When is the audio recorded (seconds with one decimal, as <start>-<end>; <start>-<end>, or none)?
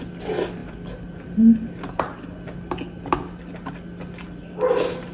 0.0-5.1